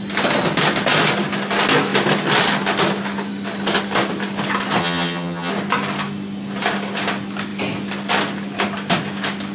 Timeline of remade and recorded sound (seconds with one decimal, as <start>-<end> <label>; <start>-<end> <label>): 0.0-4.8 recorded; 4.8-5.5 remade; 5.5-9.5 recorded